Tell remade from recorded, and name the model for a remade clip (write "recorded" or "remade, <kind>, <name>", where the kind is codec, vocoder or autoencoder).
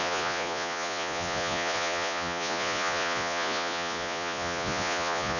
remade, vocoder, Vocos